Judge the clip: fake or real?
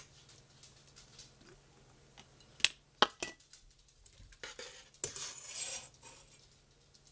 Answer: real